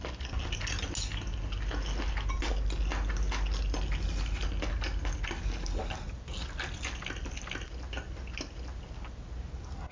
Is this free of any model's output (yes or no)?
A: yes